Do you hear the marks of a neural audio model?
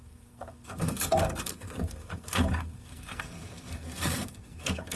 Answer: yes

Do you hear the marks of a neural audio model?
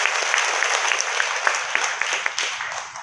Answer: no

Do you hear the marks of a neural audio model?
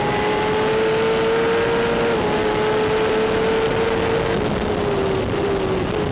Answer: no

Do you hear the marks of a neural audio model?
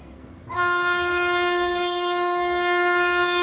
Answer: yes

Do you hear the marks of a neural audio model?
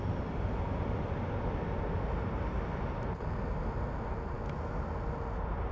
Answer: no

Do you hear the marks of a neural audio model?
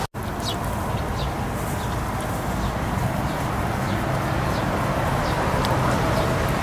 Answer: no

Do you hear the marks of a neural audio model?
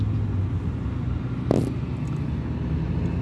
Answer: no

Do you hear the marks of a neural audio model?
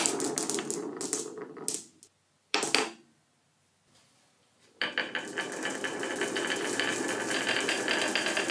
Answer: no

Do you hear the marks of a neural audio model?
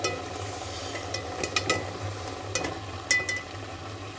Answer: no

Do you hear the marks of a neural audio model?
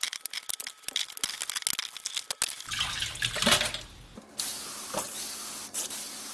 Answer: no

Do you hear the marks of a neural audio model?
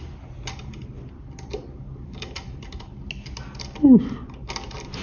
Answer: no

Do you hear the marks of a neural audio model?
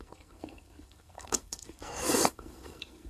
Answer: yes